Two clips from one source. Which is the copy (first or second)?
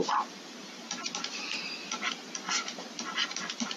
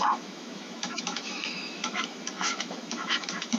second